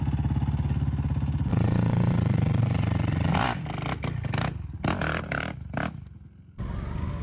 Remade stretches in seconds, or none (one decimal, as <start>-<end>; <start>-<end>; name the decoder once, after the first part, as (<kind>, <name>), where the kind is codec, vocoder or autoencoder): 1.5-3.3 (vocoder, Vocos)